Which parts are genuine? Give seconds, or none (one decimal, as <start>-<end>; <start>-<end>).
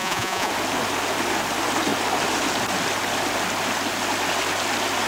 0.5-5.1